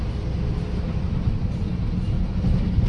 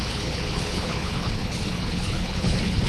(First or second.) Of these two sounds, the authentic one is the first